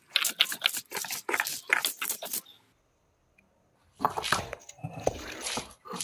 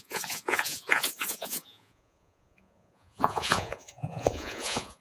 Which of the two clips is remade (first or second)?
second